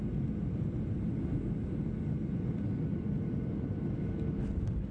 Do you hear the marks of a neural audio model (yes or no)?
no